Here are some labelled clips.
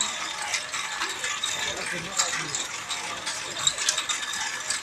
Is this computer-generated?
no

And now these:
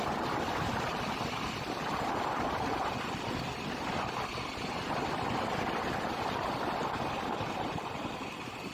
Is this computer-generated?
no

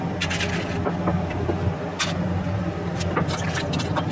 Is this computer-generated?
no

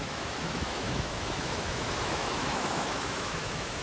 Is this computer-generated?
yes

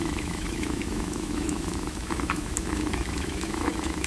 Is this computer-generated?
yes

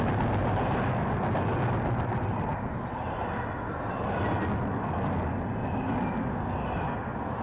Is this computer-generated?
no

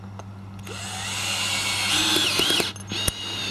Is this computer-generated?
no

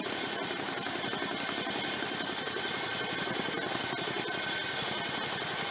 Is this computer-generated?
no